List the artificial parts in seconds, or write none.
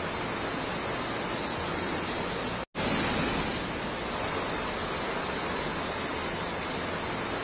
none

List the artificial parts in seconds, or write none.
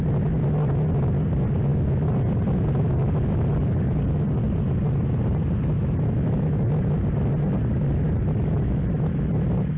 none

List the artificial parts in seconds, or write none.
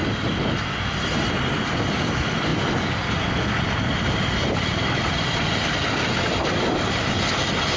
none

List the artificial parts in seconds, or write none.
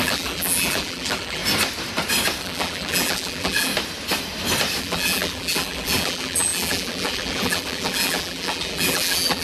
0.0-1.4 (vocoder, BigVGAN v2); 2.4-3.7; 4.8-9.4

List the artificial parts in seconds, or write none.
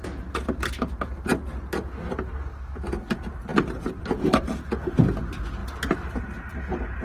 5.6-6.2 (vocoder, BigVGAN v2)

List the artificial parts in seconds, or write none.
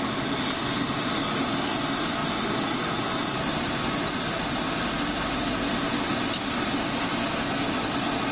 none